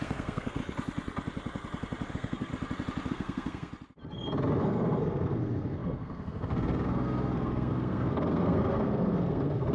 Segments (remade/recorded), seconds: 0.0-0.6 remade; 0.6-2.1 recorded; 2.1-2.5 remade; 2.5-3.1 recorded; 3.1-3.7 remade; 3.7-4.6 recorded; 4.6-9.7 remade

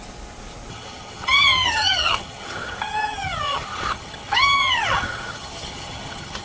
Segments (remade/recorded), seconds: 0.0-0.7 recorded; 0.7-6.4 remade

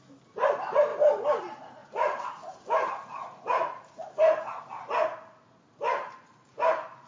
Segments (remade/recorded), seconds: 0.0-1.8 recorded; 1.8-4.5 remade; 4.5-7.1 recorded